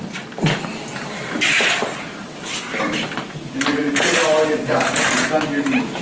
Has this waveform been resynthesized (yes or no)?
no